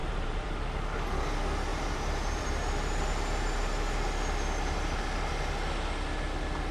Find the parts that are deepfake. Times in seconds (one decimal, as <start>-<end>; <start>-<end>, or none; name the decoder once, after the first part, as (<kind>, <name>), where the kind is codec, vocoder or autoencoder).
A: 0.0-0.5 (vocoder, BigVGAN v2); 1.7-3.0